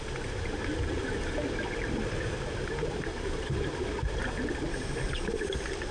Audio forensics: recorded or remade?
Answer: recorded